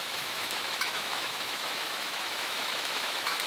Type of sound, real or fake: fake